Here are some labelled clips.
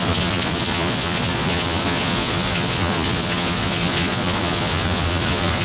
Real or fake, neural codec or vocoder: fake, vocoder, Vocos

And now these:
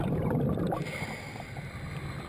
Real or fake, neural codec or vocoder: real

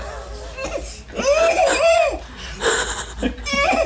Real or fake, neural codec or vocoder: real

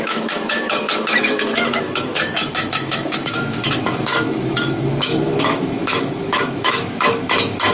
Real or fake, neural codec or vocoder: fake, autoencoder, DAC-VAE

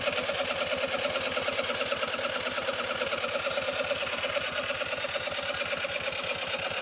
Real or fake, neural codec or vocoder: real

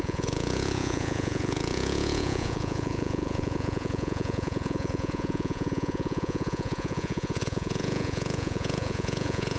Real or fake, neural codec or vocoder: fake, vocoder, Vocos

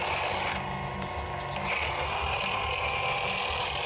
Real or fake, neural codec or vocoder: real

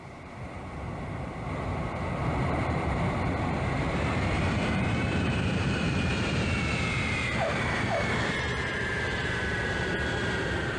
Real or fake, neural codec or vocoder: fake, vocoder, BigVGAN v2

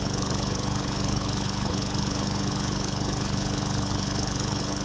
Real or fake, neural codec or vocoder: fake, codec, HILCodec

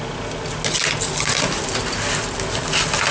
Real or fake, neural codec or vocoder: real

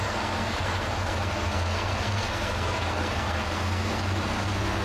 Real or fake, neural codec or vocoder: fake, codec, SNAC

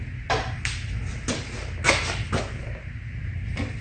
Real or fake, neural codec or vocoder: real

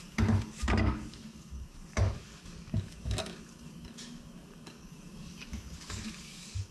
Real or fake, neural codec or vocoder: fake, codec, DAC